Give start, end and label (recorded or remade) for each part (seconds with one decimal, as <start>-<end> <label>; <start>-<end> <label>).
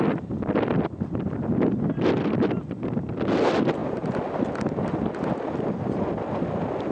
0.0-6.9 recorded